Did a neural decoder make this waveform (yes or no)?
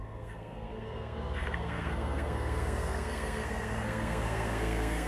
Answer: yes